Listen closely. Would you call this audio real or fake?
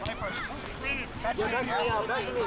real